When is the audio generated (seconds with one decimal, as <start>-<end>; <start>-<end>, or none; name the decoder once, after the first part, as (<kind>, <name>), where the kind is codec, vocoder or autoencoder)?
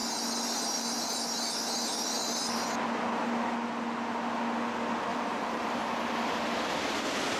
5.1-5.8 (vocoder, BigVGAN v2)